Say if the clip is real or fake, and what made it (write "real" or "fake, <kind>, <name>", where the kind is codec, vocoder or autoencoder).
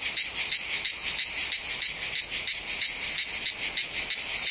real